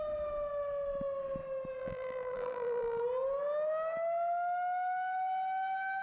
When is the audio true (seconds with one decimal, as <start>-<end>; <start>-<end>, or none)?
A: 0.0-1.8; 3.0-6.0